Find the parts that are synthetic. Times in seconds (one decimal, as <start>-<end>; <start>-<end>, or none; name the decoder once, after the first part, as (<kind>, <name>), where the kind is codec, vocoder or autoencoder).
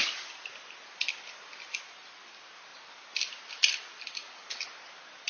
none